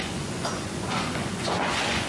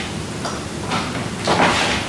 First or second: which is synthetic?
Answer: first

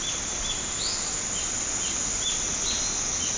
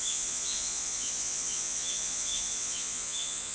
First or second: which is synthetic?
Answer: second